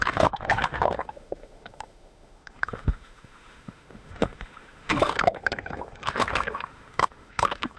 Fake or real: fake